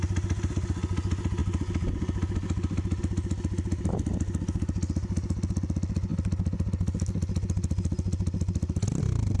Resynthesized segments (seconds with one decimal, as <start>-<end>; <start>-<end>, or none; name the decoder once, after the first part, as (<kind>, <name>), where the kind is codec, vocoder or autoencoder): none